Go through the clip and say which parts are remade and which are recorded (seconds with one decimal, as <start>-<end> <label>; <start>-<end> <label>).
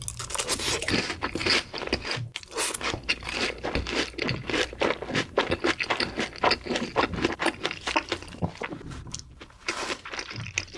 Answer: 0.0-10.8 recorded